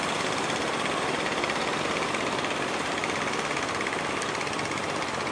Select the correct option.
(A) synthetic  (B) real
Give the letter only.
A